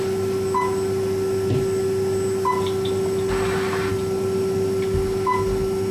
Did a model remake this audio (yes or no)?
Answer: no